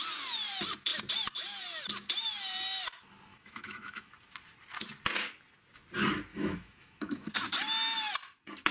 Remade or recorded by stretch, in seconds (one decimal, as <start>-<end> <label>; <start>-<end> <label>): 0.0-3.3 recorded; 3.3-4.1 remade; 4.1-6.3 recorded; 6.3-7.3 remade; 7.3-8.7 recorded